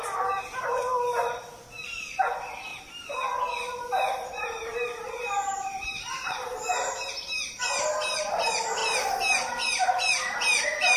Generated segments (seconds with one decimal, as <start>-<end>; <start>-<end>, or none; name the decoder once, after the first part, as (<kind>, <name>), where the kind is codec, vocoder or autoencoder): 2.7-7.6 (vocoder, BigVGAN v2)